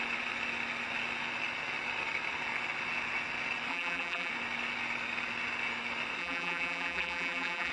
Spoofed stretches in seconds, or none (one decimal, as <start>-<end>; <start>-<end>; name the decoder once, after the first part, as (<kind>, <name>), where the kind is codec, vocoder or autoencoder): 3.7-4.3 (vocoder, BigVGAN v2); 6.2-7.7